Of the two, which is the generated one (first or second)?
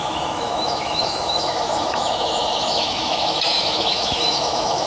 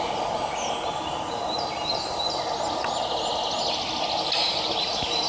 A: first